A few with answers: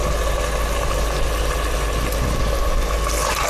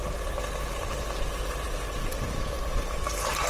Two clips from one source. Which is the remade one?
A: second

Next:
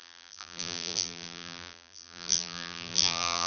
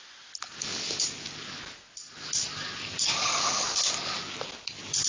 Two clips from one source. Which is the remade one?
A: first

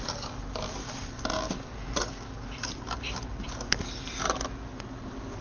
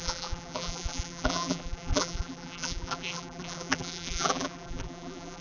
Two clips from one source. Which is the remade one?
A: second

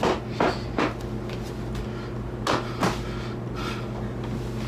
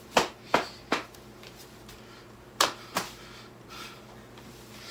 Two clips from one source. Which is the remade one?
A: second